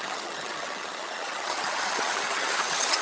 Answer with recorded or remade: remade